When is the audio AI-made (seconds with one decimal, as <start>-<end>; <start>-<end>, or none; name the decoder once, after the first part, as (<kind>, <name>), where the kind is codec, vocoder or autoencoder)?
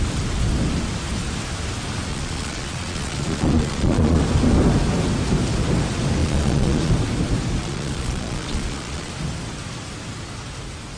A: 2.1-4.2 (vocoder, Vocos); 6.2-6.9; 7.6-9.1